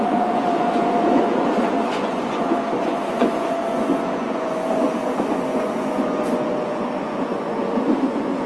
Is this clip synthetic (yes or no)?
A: yes